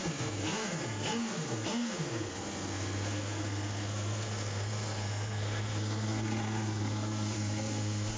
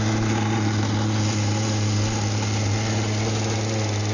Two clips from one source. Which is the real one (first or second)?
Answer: second